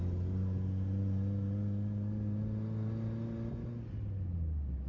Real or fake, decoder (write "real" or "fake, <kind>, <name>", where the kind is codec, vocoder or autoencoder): real